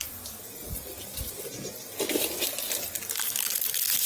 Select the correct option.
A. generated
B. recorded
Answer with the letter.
B